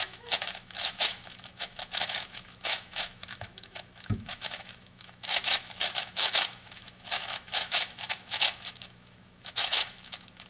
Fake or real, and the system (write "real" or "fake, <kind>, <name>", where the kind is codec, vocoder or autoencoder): fake, autoencoder, DAC-VAE